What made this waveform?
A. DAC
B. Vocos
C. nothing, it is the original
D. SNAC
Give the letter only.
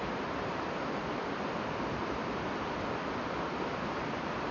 C